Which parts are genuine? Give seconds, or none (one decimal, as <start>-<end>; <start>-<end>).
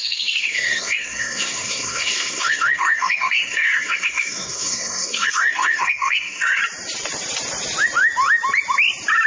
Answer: 6.6-9.3